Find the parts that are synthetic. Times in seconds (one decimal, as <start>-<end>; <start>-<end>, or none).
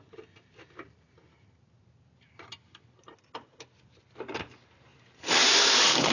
4.9-6.1